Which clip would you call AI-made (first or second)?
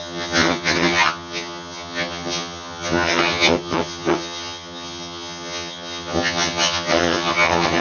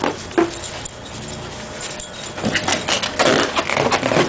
first